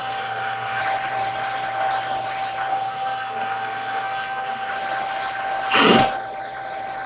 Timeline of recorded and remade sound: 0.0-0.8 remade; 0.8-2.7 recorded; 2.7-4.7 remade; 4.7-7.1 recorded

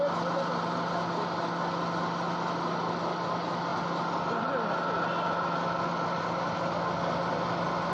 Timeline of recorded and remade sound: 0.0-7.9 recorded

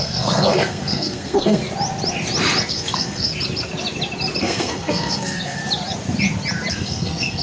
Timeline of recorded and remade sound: 0.0-1.6 remade; 1.6-2.7 recorded; 2.7-3.3 remade; 3.3-4.4 recorded; 4.4-5.6 remade; 5.6-6.7 recorded; 6.7-7.4 remade